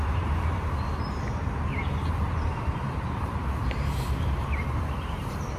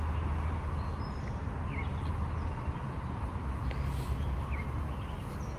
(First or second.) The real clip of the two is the second